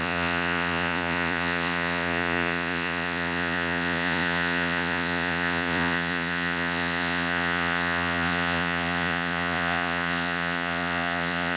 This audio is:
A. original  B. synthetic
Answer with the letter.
B